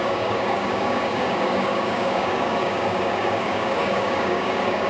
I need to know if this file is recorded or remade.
remade